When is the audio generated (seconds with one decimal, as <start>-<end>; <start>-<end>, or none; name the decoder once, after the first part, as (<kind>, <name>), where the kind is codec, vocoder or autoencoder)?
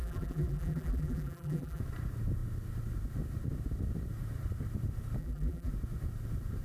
0.0-1.8 (vocoder, BigVGAN v2); 5.2-5.7